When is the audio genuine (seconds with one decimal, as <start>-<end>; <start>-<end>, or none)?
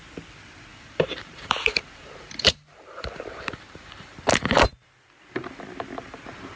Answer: 0.0-0.7; 4.7-6.6